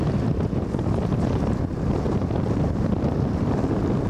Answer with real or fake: real